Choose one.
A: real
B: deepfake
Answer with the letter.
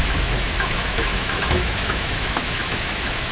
B